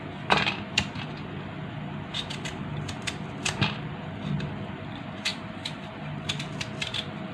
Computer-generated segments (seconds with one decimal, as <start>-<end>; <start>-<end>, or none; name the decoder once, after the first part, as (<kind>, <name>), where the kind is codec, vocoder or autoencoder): 5.3-6.4 (vocoder, BigVGAN v2)